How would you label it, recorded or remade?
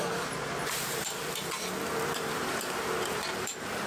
remade